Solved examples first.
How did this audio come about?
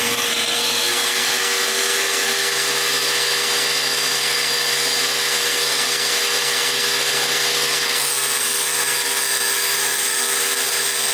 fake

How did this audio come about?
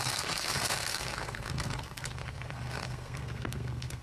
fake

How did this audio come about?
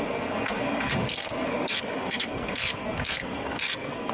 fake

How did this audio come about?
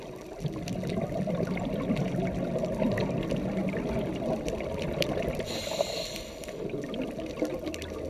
real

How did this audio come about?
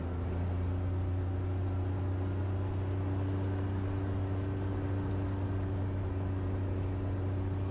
real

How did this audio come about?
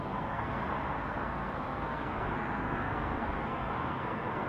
fake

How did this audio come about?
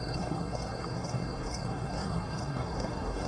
fake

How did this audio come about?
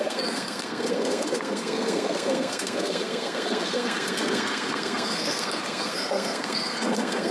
fake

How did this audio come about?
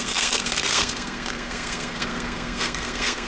fake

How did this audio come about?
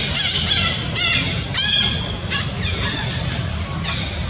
real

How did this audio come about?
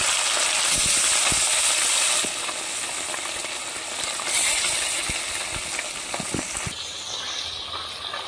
real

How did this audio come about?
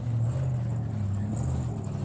real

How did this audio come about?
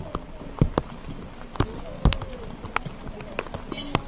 real